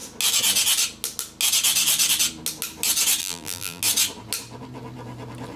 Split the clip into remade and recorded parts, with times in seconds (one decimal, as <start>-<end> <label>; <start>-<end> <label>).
0.0-3.2 recorded; 3.2-3.8 remade; 3.8-5.6 recorded